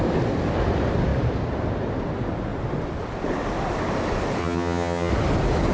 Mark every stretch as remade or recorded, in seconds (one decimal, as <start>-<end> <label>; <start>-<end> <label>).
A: 0.0-4.4 recorded; 4.4-5.1 remade; 5.1-5.7 recorded